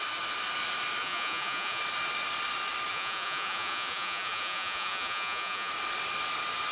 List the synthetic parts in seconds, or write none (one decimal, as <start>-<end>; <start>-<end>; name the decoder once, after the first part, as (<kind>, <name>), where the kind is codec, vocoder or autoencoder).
1.0-1.8 (vocoder, Vocos); 2.9-5.7